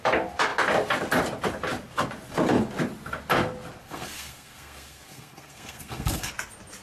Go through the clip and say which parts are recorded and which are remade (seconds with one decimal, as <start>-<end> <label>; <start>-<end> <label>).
0.0-3.8 recorded; 3.8-6.3 remade; 6.3-6.8 recorded